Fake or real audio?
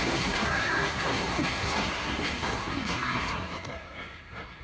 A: fake